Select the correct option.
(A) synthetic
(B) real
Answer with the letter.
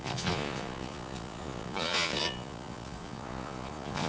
A